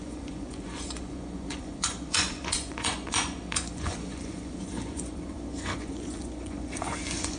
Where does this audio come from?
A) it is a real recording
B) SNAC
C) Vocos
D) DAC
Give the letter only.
C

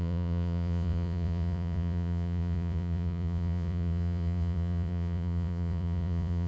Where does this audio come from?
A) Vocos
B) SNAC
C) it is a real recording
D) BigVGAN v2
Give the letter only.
A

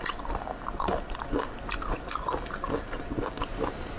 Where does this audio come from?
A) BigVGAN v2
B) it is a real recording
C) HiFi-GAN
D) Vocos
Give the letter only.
B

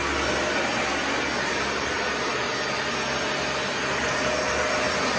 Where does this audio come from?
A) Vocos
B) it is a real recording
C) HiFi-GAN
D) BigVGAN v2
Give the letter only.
B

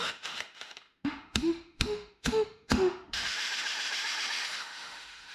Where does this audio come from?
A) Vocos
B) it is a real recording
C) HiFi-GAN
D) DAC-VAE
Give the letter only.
D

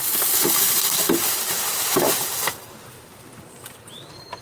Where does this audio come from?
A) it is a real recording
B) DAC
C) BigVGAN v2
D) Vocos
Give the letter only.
C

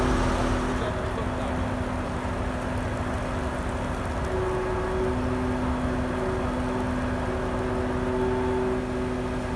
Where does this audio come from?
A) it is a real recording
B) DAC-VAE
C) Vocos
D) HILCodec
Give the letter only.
A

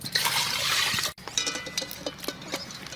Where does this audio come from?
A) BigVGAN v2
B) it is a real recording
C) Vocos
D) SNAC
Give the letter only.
B